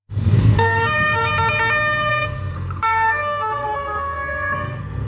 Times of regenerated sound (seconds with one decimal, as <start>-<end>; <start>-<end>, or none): 0.0-1.3; 2.1-5.1